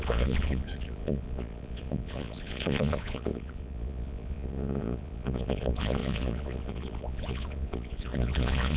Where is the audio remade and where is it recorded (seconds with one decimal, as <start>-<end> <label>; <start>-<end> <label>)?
0.0-8.8 remade